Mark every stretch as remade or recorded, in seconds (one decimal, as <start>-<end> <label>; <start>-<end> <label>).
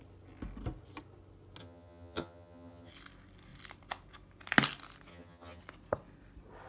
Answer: 0.0-1.6 recorded; 1.6-2.9 remade; 2.9-5.1 recorded; 5.1-5.6 remade; 5.6-6.7 recorded